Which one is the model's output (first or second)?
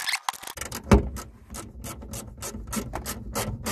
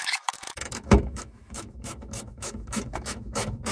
second